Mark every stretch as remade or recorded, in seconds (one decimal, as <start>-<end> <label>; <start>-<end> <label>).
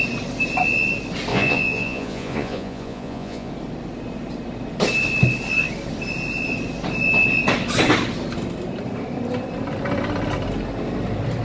0.0-1.3 recorded; 1.3-3.5 remade; 3.5-11.4 recorded